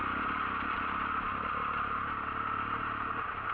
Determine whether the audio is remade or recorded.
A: recorded